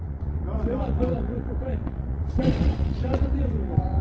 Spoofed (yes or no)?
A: yes